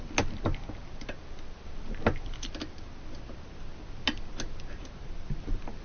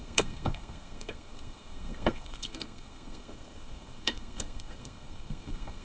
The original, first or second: first